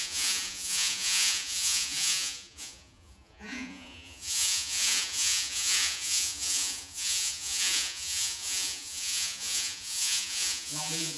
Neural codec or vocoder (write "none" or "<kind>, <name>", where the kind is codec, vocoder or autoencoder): vocoder, Vocos